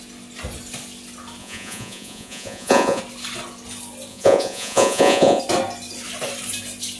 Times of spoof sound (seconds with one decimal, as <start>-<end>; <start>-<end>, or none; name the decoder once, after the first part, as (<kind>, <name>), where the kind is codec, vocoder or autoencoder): 1.4-3.0 (vocoder, Vocos); 4.1-5.4